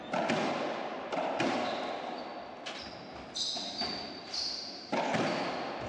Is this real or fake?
real